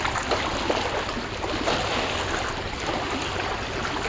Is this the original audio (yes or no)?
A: yes